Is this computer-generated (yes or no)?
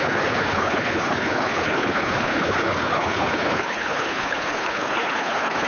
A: yes